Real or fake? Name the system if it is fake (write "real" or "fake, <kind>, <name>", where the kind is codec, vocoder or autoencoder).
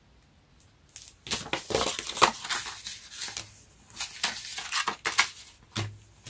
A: real